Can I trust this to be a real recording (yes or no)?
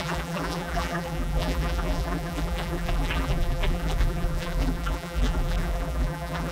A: no